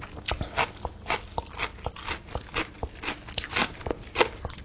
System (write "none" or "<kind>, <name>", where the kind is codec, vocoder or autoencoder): none